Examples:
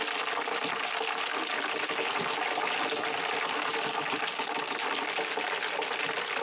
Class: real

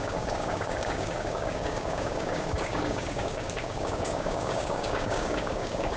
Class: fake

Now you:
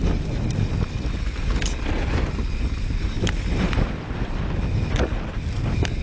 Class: real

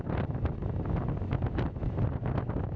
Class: real